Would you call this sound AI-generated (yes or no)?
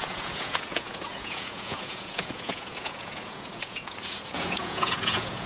yes